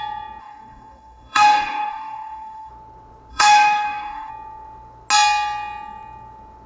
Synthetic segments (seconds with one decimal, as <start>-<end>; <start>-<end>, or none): 0.4-2.7; 3.3-4.3